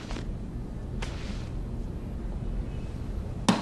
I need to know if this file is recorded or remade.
recorded